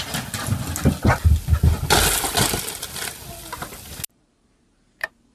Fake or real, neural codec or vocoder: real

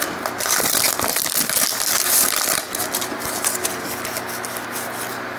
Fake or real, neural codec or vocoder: real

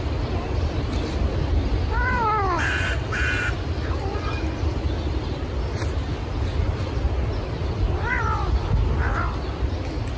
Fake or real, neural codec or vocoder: real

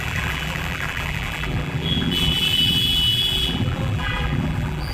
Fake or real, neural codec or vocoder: fake, vocoder, BigVGAN v2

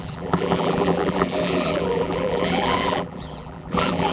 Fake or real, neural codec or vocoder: fake, vocoder, BigVGAN v2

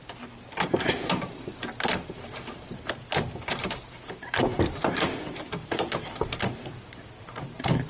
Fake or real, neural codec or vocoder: fake, vocoder, BigVGAN v2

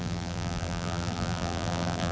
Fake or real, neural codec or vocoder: fake, vocoder, BigVGAN v2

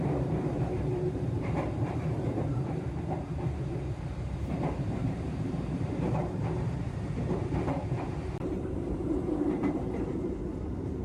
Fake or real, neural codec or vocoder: fake, vocoder, BigVGAN v2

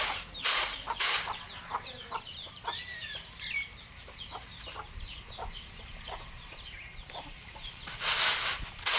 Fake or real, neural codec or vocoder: fake, vocoder, BigVGAN v2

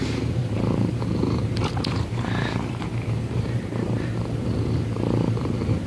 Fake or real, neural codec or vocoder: fake, vocoder, BigVGAN v2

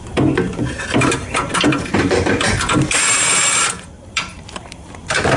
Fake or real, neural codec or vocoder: fake, vocoder, BigVGAN v2